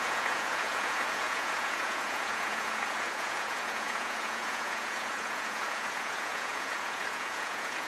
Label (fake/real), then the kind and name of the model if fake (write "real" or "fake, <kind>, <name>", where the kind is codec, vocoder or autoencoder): fake, vocoder, Vocos